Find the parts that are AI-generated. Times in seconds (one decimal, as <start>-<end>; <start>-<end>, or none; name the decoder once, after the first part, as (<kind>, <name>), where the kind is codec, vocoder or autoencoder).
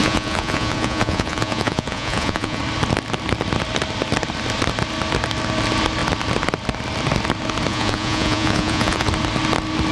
0.0-2.6 (vocoder, Vocos); 7.7-9.1